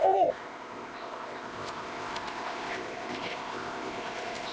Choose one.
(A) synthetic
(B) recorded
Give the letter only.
A